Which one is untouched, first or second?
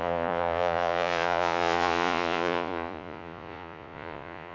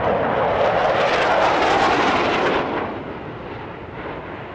second